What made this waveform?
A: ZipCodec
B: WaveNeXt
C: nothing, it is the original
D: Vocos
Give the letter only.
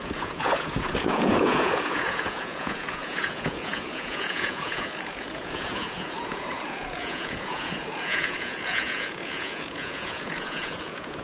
D